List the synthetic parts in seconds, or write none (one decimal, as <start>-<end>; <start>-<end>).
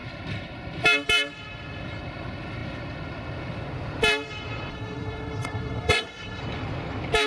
4.7-6.4